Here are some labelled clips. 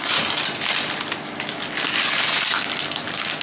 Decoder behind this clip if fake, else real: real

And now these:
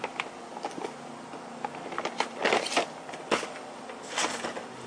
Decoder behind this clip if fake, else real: real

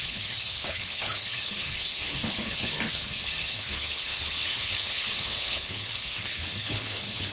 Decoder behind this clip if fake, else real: fake, codec, HILCodec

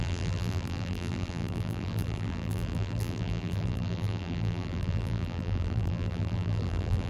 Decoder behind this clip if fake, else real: fake, vocoder, BigVGAN v2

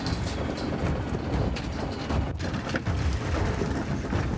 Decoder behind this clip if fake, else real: real